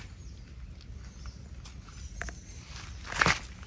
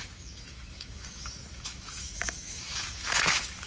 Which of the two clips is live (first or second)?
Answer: first